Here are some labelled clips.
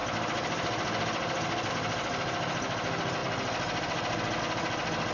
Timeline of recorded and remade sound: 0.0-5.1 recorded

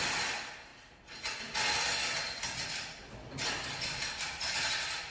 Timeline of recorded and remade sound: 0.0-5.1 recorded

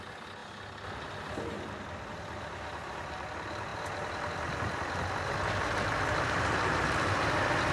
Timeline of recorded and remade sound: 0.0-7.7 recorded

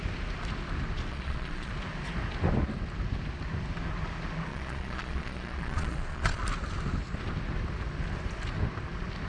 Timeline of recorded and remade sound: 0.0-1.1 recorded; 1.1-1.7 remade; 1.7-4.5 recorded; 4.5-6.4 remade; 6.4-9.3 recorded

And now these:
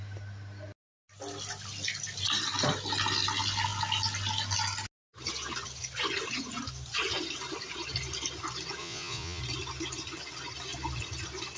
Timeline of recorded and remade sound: 0.0-8.8 recorded; 8.8-9.4 remade; 9.4-11.6 recorded

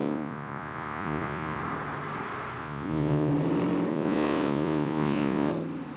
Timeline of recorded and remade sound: 0.0-1.6 remade; 1.6-2.6 recorded; 2.6-3.3 remade; 3.3-3.9 recorded; 3.9-5.5 remade; 5.5-6.0 recorded